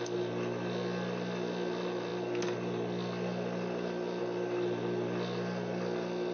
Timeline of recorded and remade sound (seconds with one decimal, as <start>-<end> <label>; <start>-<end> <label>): 0.0-6.3 recorded